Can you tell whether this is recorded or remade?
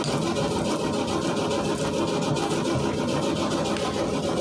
recorded